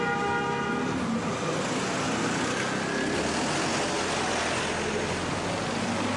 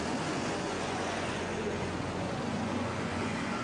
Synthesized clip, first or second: second